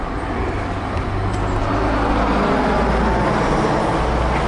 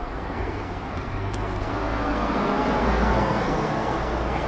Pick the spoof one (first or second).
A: second